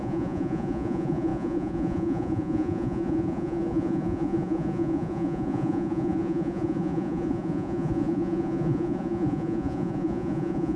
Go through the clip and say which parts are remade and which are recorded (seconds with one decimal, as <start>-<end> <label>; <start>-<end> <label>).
0.0-10.8 remade